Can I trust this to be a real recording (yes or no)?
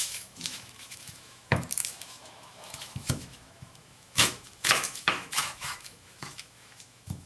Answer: no